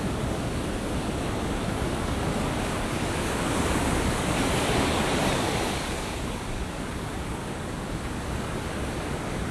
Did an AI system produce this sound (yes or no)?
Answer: yes